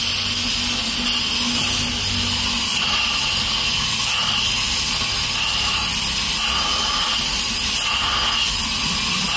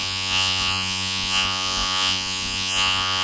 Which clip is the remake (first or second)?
second